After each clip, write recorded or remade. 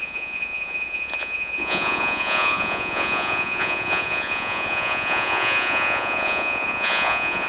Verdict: remade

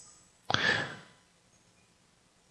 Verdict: recorded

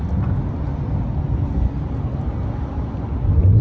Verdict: recorded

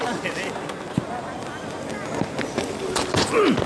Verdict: recorded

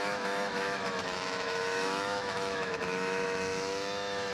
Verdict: remade